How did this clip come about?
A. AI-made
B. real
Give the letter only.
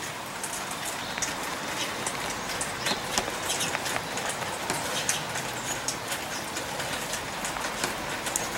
A